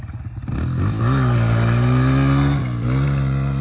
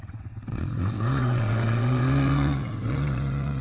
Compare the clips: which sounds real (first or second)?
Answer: first